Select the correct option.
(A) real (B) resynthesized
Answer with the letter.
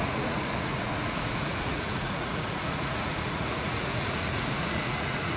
B